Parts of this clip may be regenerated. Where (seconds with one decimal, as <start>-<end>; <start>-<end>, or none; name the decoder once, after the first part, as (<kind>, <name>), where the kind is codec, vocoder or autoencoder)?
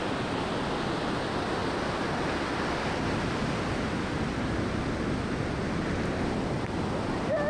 none